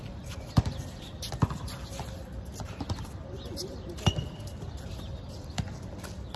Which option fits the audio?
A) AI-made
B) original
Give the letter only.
A